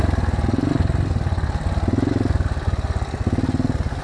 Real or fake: real